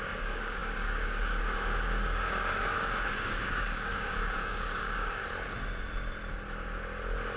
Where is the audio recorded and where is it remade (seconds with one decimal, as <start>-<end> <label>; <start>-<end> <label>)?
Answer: 0.0-5.2 remade; 5.2-7.4 recorded